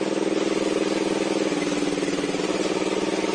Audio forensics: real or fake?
real